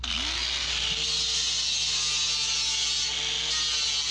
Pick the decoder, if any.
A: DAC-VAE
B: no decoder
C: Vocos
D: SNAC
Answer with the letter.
B